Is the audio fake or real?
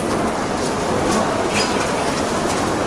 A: real